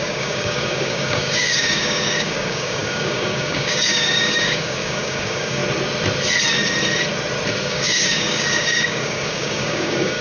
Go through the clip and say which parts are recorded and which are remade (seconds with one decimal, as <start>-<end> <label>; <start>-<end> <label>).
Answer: 0.0-5.6 remade; 5.6-7.6 recorded; 7.6-10.2 remade